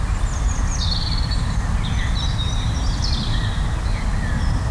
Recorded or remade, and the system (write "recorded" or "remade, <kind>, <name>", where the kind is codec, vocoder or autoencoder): recorded